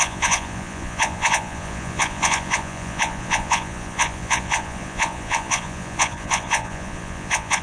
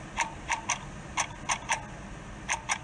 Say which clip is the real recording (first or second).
second